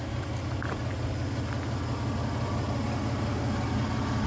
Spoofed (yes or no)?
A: no